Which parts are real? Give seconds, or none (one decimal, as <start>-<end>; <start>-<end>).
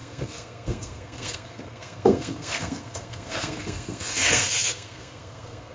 none